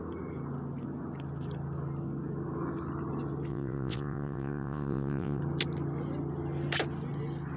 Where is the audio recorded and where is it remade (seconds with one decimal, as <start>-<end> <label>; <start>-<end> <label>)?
0.0-3.5 recorded; 3.5-5.4 remade; 5.4-7.6 recorded